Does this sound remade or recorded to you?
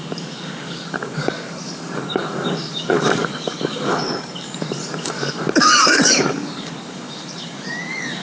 remade